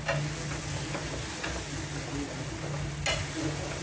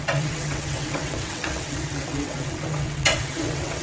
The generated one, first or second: second